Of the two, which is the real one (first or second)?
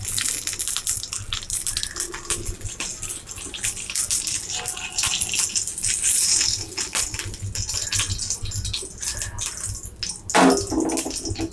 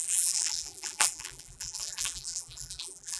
first